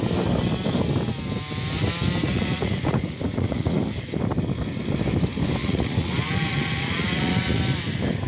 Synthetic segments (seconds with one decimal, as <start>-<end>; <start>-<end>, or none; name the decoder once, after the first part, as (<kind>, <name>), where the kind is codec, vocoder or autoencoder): 2.2-3.8 (vocoder, Vocos); 5.6-7.6